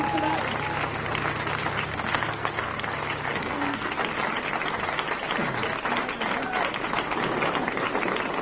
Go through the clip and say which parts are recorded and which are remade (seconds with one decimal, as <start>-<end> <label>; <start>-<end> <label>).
0.0-1.9 recorded; 1.9-2.8 remade; 2.8-3.3 recorded; 3.3-3.9 remade; 3.9-8.4 recorded